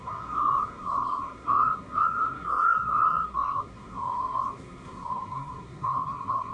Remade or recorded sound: remade